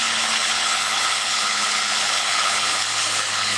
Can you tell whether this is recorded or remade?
remade